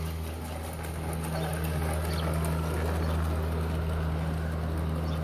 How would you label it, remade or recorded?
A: recorded